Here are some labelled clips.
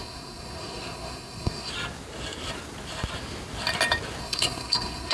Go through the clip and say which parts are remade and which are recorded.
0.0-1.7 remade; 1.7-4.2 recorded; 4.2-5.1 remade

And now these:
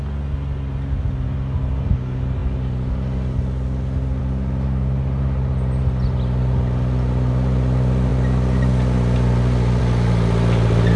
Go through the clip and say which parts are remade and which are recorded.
0.0-11.0 recorded

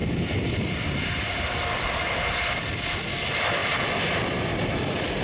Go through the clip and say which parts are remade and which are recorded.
0.0-2.6 remade; 2.6-3.6 recorded; 3.6-5.2 remade

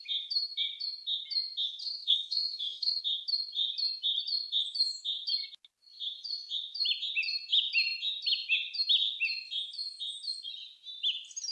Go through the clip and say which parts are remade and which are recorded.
0.0-1.8 recorded; 1.8-3.0 remade; 3.0-11.5 recorded

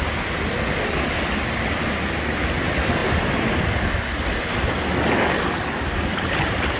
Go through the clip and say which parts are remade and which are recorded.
0.0-6.8 recorded

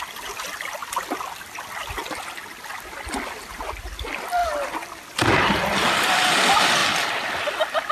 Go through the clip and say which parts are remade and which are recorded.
0.0-7.9 recorded